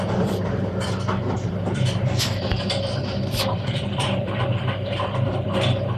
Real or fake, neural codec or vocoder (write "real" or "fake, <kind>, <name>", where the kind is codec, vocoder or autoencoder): fake, vocoder, BigVGAN v2